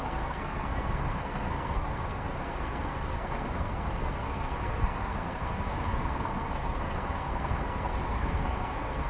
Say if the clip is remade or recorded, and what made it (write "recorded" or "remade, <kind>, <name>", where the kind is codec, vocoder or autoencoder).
remade, codec, SNAC